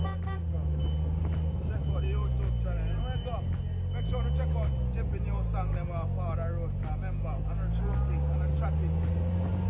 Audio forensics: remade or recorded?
recorded